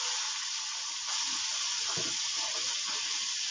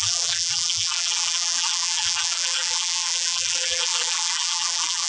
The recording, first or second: first